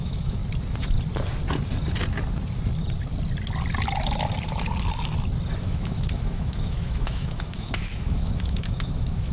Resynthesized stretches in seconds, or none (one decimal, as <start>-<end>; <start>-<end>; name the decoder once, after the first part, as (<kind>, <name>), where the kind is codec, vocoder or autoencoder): 0.0-0.4 (autoencoder, DAC-VAE); 5.6-9.3